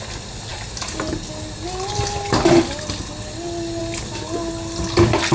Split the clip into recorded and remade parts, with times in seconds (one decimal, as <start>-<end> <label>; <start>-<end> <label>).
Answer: 0.0-5.3 recorded